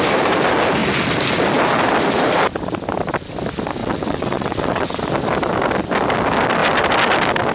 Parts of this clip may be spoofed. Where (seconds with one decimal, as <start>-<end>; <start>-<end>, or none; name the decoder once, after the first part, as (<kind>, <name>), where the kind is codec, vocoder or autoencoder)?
3.8-5.0 (vocoder, WaveNeXt)